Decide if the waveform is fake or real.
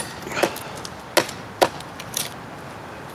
real